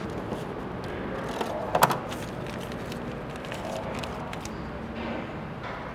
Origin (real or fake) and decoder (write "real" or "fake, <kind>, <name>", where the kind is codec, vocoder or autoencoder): real